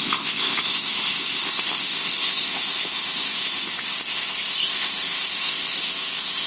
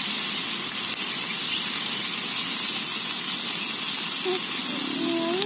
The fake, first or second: first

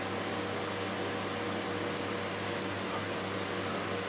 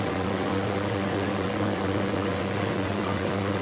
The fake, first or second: second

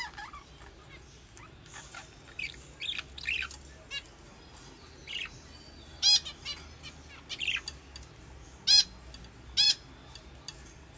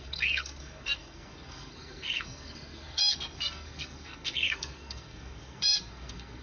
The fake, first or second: second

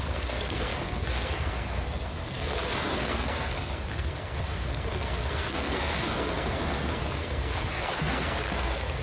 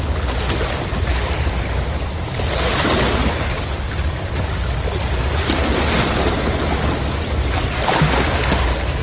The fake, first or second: first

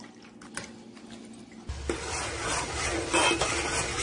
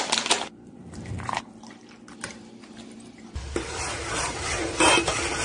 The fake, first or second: second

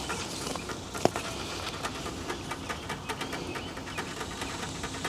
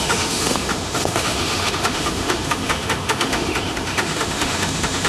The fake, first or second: second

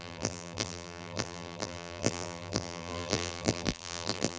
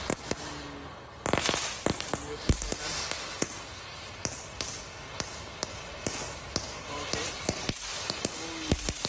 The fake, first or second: first